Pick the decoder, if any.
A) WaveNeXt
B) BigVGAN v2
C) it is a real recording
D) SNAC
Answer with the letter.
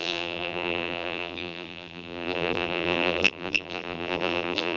B